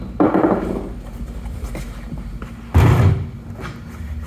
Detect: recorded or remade recorded